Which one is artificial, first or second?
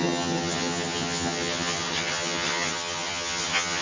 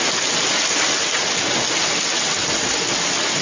first